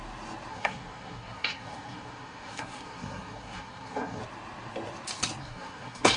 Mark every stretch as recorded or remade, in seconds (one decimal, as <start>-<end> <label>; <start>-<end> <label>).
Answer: 0.0-0.5 recorded; 0.5-4.2 remade; 4.2-5.4 recorded; 5.4-6.2 remade